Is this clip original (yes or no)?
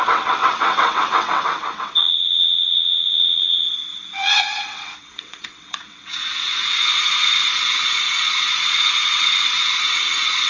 no